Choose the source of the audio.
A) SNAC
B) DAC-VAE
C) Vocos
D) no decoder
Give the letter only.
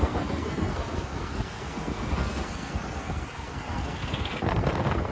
A